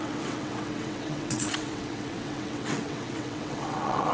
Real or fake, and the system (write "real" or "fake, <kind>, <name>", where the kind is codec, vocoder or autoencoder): fake, vocoder, WaveNeXt